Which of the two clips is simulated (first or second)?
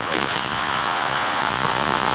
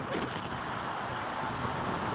first